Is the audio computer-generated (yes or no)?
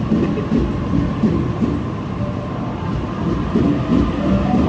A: no